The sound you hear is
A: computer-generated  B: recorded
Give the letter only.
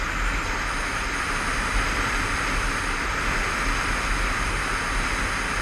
B